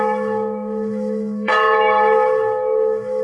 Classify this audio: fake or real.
fake